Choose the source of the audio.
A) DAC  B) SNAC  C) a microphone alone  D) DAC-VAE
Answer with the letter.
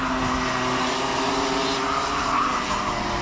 C